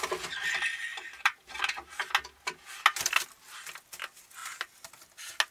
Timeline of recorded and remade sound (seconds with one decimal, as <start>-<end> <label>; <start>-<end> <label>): 0.0-0.9 recorded; 0.9-2.1 remade; 2.1-4.4 recorded; 4.4-4.9 remade; 4.9-5.5 recorded